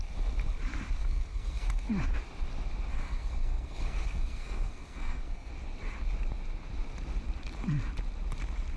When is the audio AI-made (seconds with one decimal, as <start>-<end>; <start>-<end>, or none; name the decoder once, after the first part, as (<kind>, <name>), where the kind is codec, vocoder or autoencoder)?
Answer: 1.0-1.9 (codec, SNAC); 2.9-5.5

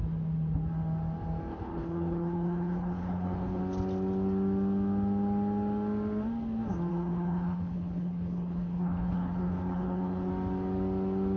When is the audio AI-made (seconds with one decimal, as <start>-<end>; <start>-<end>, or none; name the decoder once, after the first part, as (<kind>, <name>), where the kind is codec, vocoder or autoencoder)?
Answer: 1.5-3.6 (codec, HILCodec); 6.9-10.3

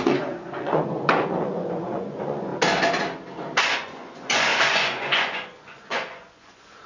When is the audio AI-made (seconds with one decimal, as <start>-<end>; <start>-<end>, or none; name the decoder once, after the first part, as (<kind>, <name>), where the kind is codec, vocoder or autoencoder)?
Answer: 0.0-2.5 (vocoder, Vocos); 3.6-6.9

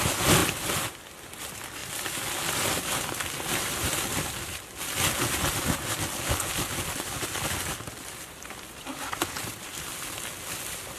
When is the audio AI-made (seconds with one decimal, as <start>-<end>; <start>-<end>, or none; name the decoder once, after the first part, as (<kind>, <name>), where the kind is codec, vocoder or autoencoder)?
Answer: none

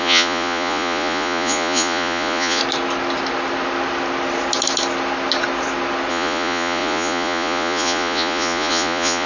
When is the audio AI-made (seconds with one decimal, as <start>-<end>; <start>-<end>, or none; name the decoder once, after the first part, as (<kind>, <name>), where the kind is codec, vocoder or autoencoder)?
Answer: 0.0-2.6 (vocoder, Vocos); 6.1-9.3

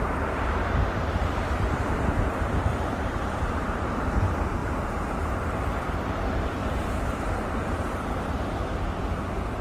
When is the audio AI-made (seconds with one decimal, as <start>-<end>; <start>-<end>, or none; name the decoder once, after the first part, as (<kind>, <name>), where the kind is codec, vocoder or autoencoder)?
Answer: 0.0-9.6 (vocoder, BigVGAN v2)

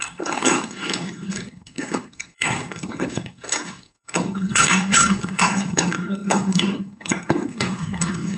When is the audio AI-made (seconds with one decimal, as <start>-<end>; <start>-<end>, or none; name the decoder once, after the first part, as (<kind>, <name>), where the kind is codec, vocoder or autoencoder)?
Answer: 0.0-8.4 (codec, SNAC)